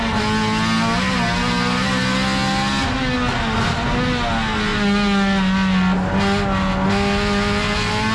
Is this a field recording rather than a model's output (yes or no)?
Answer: yes